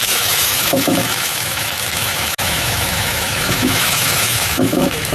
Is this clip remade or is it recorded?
remade